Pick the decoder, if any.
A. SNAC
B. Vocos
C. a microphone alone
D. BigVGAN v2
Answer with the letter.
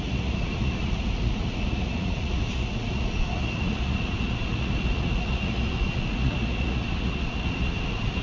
B